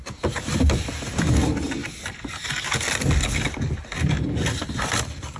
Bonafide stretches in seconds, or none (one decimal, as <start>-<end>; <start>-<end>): 0.0-5.4